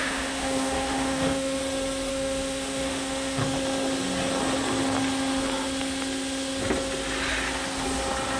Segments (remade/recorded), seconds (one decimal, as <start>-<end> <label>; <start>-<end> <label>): 0.0-1.6 remade; 1.6-2.1 recorded; 2.1-3.4 remade; 3.4-8.4 recorded